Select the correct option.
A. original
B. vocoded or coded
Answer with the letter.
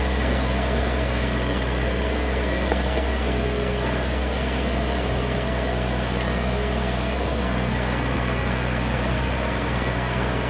B